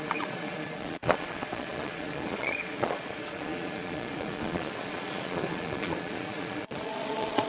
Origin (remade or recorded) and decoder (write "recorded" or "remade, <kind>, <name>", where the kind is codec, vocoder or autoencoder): remade, vocoder, Vocos